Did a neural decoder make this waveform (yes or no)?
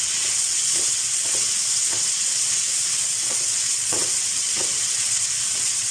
yes